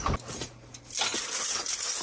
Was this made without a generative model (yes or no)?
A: yes